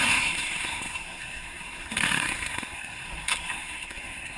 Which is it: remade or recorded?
remade